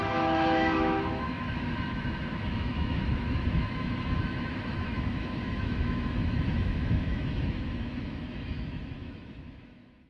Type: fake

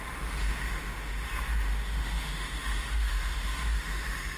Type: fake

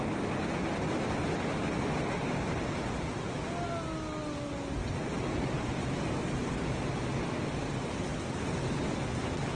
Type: real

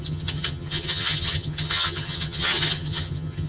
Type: fake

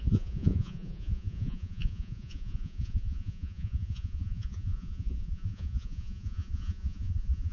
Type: fake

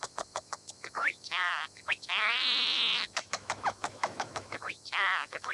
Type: fake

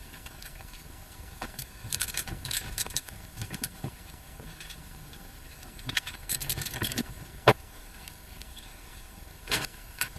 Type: fake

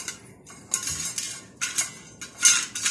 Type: real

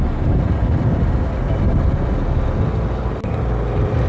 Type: real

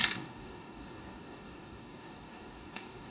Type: fake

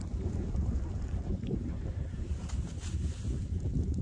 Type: fake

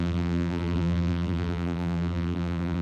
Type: fake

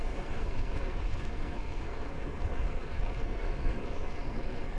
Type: fake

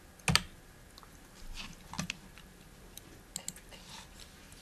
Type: real